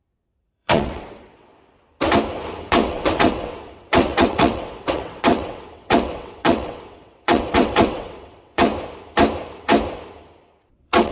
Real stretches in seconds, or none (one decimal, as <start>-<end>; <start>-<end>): 1.5-2.6; 8.7-10.6